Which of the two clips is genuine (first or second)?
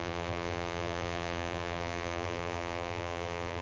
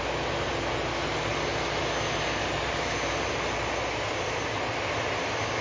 second